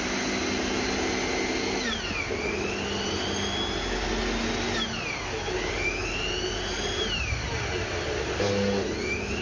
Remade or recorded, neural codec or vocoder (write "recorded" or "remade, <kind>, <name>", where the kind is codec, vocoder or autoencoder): recorded